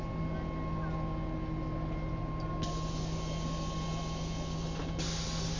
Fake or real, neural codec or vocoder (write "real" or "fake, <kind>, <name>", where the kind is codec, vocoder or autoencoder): real